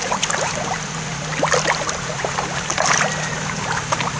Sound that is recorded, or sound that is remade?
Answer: recorded